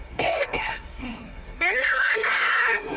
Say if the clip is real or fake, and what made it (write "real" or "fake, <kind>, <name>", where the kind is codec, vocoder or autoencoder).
fake, codec, SNAC